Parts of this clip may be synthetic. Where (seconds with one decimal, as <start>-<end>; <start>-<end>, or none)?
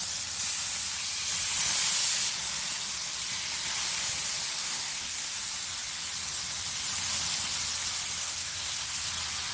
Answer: 4.6-5.3; 8.2-9.1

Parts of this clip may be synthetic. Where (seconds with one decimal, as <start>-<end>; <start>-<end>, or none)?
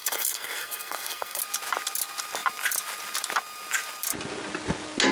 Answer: 0.0-1.4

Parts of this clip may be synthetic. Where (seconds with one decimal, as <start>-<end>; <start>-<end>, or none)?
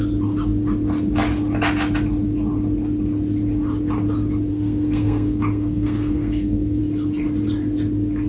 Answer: 4.5-6.8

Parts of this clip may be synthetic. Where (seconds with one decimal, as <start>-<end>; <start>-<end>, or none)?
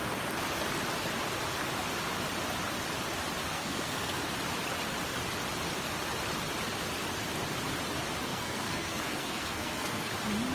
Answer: 3.5-4.2; 8.3-10.1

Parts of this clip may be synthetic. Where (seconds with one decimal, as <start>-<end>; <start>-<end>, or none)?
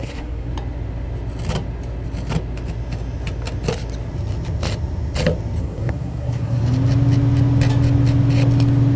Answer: 0.0-0.5; 5.6-6.6